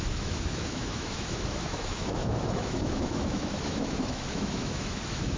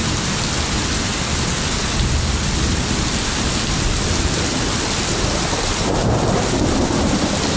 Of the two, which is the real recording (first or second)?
second